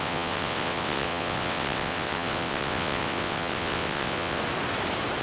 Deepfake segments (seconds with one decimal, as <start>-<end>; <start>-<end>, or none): 0.0-4.4